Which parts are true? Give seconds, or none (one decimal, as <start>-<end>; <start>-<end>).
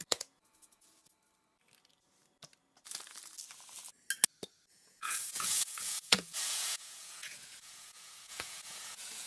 1.0-4.7